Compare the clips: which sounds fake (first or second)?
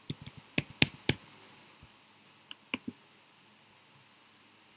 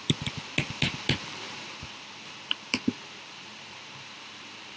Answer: second